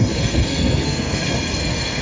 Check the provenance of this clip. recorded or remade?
remade